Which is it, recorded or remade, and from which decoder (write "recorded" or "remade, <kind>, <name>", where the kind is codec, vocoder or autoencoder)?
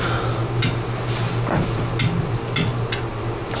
recorded